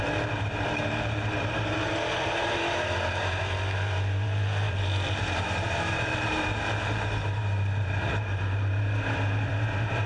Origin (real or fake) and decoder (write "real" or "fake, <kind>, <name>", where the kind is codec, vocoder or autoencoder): fake, vocoder, BigVGAN v2